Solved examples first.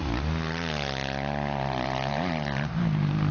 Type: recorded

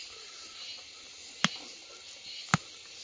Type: recorded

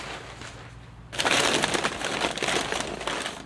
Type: recorded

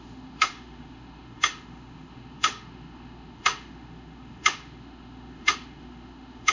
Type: remade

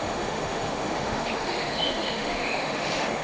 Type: remade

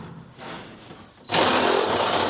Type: recorded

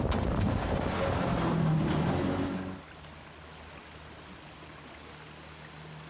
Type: recorded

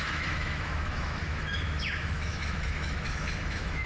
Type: remade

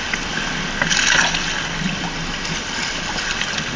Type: recorded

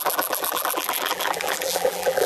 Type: remade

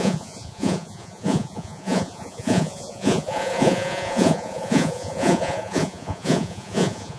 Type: remade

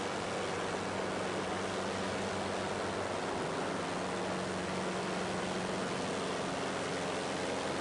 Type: recorded